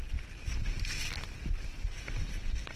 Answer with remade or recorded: remade